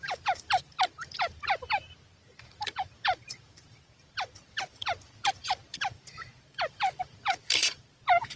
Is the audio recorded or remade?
remade